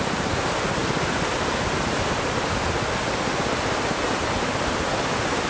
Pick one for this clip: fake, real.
real